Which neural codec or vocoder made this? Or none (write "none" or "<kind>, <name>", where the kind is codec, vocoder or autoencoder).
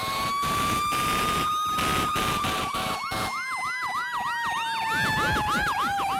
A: none